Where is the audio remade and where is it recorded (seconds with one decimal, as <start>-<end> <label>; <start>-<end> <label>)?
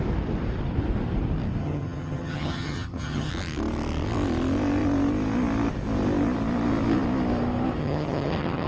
0.0-1.6 recorded; 1.6-3.3 remade; 3.3-7.8 recorded; 7.8-8.7 remade